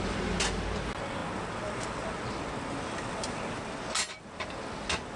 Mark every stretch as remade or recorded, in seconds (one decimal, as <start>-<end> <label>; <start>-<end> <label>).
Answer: 0.0-5.2 recorded